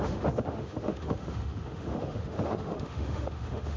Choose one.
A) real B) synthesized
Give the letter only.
B